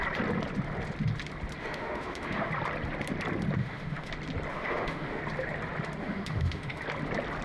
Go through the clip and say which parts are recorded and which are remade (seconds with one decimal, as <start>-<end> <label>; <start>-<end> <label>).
0.0-1.6 recorded; 1.6-2.5 remade; 2.5-3.6 recorded; 3.6-4.1 remade; 4.1-4.5 recorded; 4.5-5.2 remade; 5.2-6.0 recorded; 6.0-6.8 remade; 6.8-7.4 recorded